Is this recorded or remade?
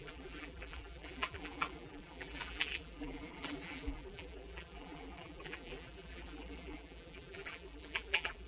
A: remade